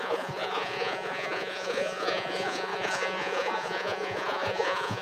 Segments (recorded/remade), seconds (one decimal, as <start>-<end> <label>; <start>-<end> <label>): 0.0-5.0 remade